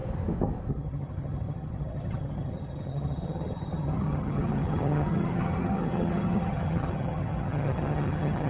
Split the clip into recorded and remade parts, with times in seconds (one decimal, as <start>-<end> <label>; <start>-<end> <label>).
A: 0.0-0.7 recorded; 0.7-8.5 remade